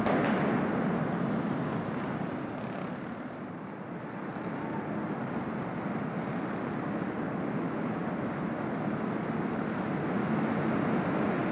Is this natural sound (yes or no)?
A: yes